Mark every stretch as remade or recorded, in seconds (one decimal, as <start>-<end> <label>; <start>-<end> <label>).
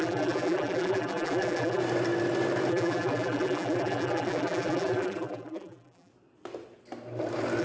0.0-1.8 remade; 1.8-2.7 recorded; 2.7-6.1 remade; 6.1-7.6 recorded